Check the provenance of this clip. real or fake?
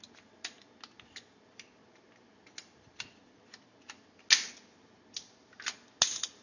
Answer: real